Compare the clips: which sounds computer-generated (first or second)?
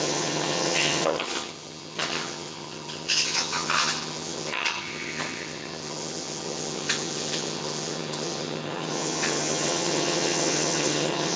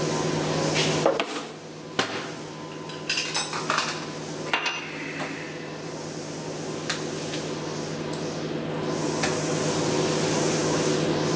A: first